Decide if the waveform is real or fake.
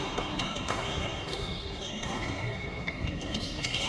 fake